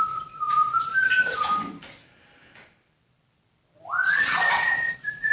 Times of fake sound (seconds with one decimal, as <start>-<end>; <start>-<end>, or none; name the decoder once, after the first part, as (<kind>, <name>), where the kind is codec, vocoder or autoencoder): 0.0-0.9 (vocoder, Vocos); 4.1-5.3